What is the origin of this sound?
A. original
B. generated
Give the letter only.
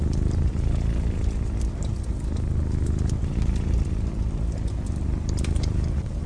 A